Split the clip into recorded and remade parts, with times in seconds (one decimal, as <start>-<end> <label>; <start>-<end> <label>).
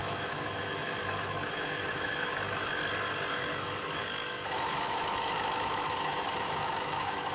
0.0-2.8 remade; 2.8-3.3 recorded; 3.3-7.3 remade